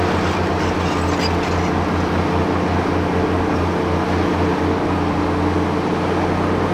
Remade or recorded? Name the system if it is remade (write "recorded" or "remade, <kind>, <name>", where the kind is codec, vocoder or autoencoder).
recorded